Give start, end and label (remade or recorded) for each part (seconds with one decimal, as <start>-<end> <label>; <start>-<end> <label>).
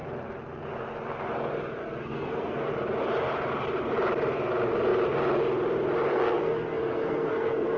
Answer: 0.0-1.8 recorded; 1.8-2.7 remade; 2.7-6.1 recorded; 6.1-7.8 remade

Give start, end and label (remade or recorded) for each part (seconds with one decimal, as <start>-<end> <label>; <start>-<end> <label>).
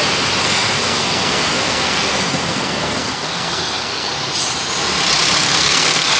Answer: 0.0-0.4 recorded; 0.4-4.1 remade; 4.1-5.4 recorded; 5.4-6.2 remade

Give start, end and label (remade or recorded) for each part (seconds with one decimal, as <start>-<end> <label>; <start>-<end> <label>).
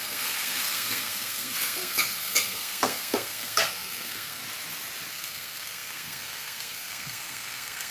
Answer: 0.0-4.4 remade; 4.4-5.1 recorded; 5.1-7.9 remade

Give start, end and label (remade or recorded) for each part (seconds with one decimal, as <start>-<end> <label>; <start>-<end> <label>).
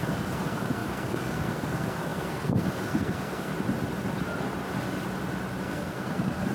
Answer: 0.0-3.5 remade; 3.5-5.6 recorded; 5.6-6.5 remade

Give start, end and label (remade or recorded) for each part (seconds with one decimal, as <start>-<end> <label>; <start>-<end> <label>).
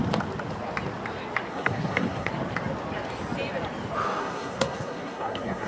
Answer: 0.0-1.5 recorded; 1.5-2.3 remade; 2.3-4.2 recorded; 4.2-5.7 remade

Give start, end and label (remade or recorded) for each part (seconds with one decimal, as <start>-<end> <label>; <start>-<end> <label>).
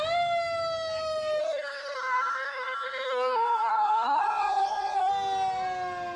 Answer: 0.0-1.4 recorded; 1.4-5.1 remade; 5.1-6.2 recorded